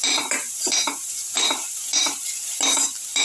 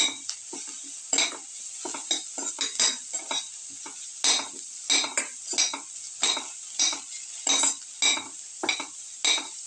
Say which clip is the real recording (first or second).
second